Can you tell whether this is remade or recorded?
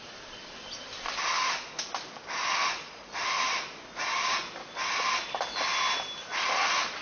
recorded